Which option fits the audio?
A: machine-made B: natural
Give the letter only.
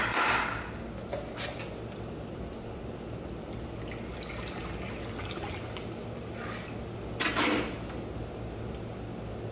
B